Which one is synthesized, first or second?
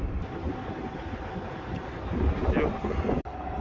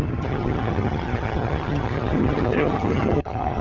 second